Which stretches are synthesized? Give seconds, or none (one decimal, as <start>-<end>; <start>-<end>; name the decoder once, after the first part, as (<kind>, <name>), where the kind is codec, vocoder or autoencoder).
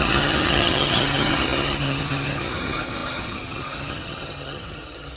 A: 0.0-5.2 (vocoder, HiFi-GAN)